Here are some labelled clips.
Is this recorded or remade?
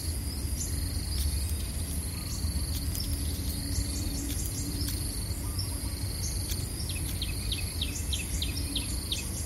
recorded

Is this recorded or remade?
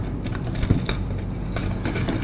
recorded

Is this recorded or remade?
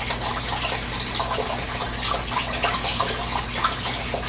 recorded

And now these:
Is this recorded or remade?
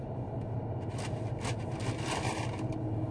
recorded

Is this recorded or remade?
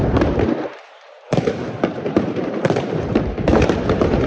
remade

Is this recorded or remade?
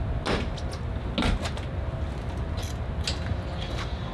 recorded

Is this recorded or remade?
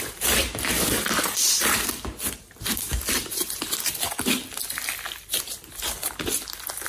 remade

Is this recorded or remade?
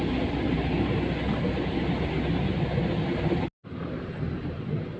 recorded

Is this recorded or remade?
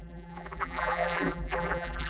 remade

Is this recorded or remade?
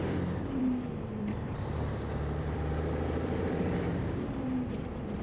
remade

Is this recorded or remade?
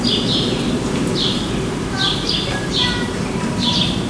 remade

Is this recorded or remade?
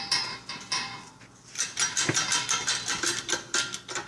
remade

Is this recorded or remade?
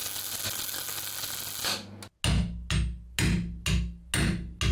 recorded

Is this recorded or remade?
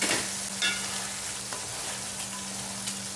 recorded